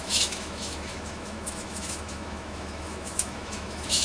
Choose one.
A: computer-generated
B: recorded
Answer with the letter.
A